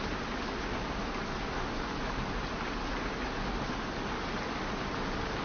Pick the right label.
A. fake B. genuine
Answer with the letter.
B